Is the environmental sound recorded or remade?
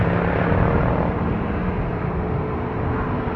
recorded